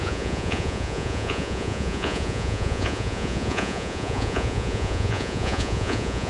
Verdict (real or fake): fake